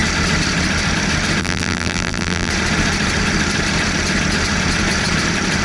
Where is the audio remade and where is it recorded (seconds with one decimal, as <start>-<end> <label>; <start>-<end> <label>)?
0.0-1.4 recorded; 1.4-2.5 remade; 2.5-5.6 recorded